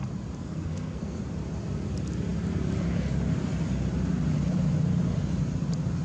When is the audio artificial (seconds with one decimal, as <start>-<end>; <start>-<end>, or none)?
0.4-1.2